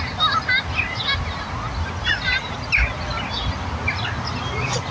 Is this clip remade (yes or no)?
no